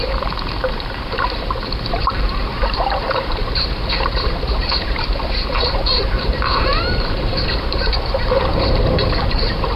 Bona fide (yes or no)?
no